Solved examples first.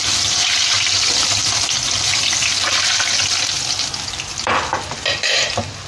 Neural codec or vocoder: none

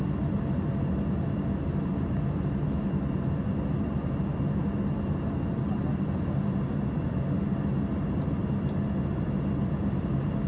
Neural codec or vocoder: none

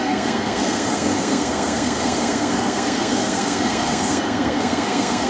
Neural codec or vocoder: codec, SNAC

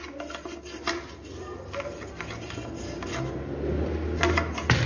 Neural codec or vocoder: none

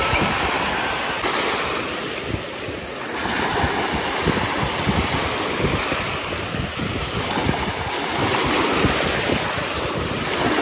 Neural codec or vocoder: none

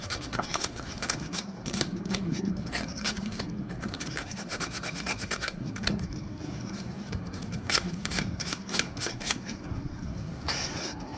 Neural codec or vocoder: codec, SNAC